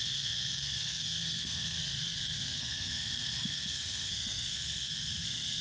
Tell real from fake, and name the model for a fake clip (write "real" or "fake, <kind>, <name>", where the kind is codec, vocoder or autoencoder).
fake, codec, SNAC